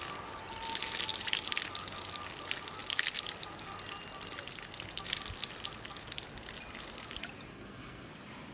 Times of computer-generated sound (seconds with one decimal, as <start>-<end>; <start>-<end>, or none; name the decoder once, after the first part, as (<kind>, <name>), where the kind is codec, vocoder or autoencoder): 7.5-8.1 (codec, SNAC)